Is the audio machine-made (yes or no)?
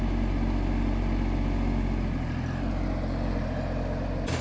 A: no